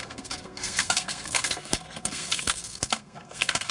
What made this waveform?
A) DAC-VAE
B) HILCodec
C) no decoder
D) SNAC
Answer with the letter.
D